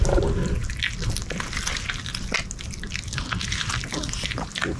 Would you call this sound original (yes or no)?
yes